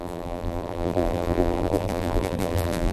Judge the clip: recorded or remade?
remade